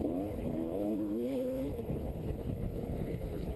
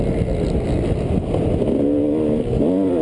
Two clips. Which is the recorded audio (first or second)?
second